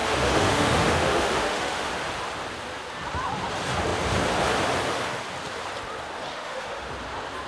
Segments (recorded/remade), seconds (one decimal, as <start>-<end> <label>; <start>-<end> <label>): 0.0-1.9 remade; 1.9-6.3 recorded; 6.3-6.9 remade; 6.9-7.5 recorded